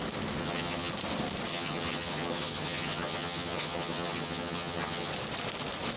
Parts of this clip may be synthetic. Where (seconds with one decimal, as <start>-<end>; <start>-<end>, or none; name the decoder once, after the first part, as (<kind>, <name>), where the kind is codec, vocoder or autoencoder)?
0.4-0.9 (vocoder, HiFi-GAN); 1.5-5.1